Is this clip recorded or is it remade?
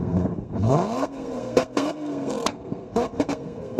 remade